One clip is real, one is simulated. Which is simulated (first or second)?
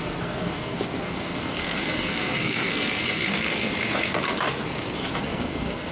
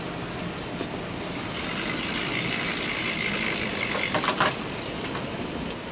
first